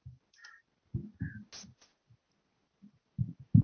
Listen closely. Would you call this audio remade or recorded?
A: recorded